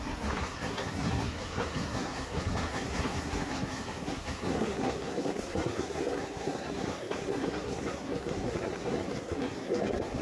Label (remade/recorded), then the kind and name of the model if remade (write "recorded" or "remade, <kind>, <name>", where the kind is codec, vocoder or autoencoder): remade, codec, SNAC